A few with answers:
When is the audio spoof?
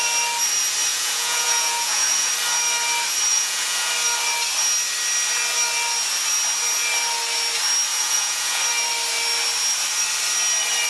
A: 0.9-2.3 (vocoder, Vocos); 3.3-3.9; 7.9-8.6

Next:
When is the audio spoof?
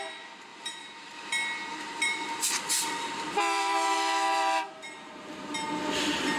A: 0.5-1.1 (vocoder, BigVGAN v2); 1.7-5.5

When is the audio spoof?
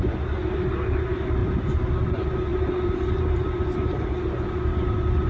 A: 2.5-3.6 (vocoder, BigVGAN v2)